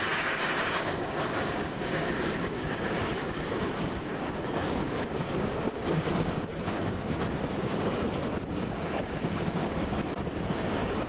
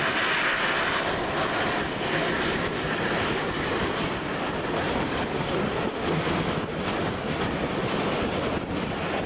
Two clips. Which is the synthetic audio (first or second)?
first